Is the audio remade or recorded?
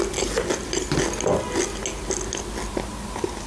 recorded